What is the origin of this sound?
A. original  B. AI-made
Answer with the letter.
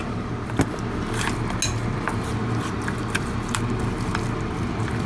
A